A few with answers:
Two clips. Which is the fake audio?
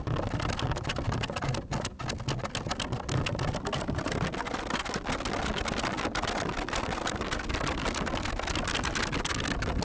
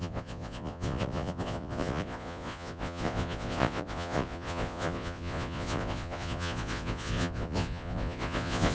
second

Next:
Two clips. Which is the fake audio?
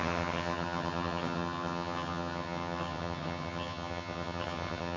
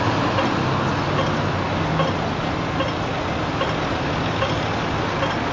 first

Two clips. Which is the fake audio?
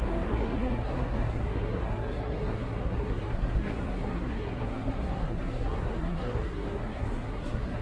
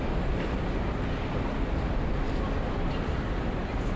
first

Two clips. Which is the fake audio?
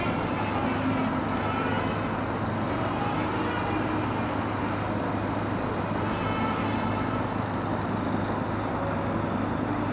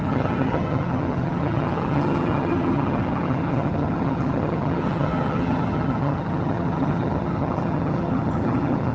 second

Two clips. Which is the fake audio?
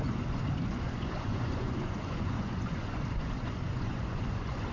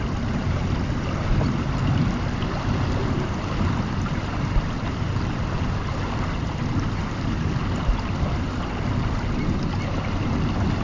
first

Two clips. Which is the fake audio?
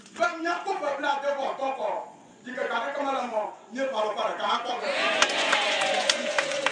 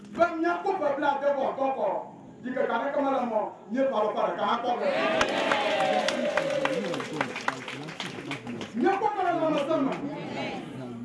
first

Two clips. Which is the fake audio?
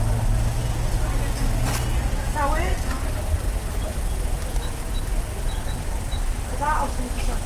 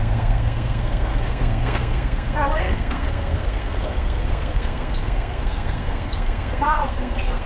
second